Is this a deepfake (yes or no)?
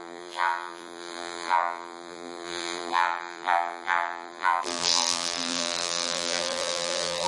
yes